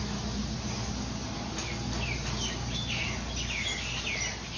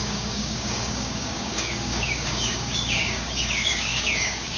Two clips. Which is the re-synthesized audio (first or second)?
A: second